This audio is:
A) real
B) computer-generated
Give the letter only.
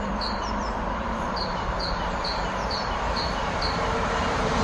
B